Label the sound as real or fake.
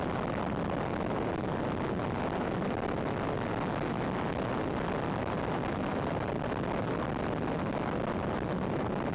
real